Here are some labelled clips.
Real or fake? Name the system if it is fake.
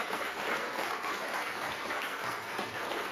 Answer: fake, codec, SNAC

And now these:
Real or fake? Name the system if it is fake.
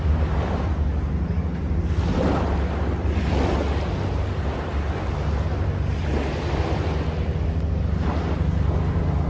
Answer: real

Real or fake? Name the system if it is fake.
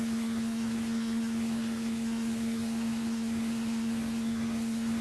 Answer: fake, codec, SNAC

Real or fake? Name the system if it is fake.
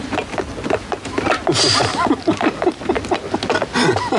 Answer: real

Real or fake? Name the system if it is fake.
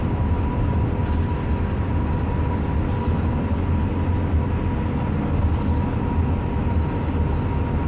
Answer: real